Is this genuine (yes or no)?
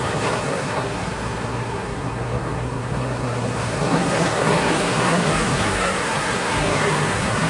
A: no